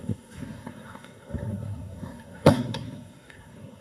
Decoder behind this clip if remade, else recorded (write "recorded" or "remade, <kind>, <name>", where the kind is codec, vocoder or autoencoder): remade, codec, SNAC